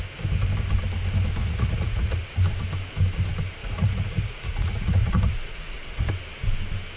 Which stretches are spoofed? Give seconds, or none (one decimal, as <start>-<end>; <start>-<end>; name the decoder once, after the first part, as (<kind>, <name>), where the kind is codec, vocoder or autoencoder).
1.4-2.2 (vocoder, Vocos); 3.6-6.1